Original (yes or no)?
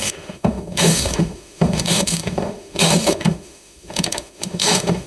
no